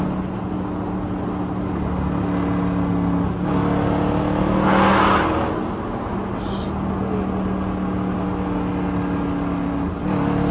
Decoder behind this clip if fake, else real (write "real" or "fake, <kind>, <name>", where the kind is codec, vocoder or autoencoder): real